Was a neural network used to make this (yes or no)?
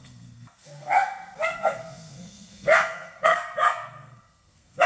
yes